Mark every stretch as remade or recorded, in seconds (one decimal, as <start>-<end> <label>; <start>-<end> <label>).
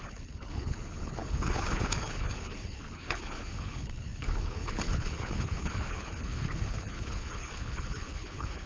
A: 0.0-8.7 remade